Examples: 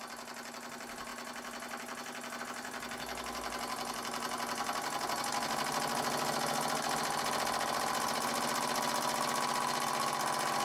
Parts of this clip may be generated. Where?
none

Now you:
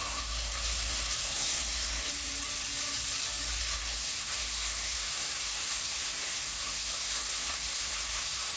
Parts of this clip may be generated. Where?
0.0-2.1 (codec, SNAC); 3.6-8.6

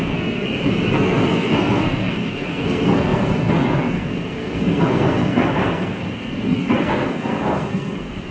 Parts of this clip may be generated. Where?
0.0-8.3 (codec, SNAC)

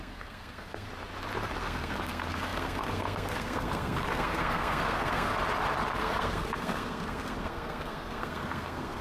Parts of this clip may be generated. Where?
0.0-0.9 (codec, SNAC); 1.6-5.3; 6.0-9.0

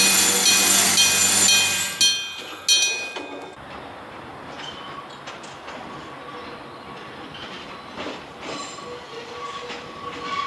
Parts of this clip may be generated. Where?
none